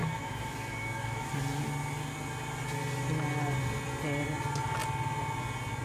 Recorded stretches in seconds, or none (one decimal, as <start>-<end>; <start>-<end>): 1.3-5.8